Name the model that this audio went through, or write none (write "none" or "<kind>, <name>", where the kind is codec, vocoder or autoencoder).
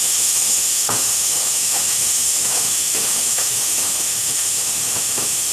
autoencoder, DAC-VAE